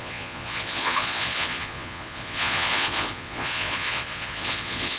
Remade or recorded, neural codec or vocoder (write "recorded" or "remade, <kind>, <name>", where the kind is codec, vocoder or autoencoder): remade, vocoder, Vocos